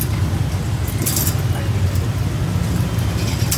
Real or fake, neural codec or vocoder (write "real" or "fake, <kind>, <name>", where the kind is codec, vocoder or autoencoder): real